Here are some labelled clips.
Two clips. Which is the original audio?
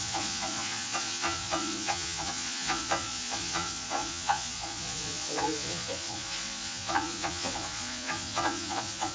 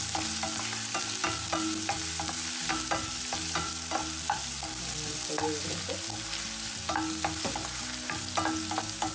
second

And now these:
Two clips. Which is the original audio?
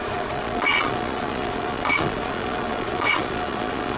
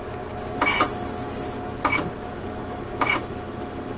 second